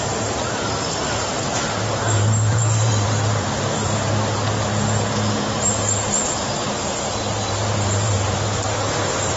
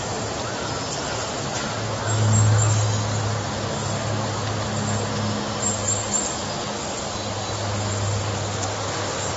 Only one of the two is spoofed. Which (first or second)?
first